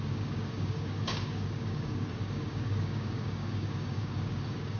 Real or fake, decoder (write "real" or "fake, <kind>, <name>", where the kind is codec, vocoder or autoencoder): fake, codec, DAC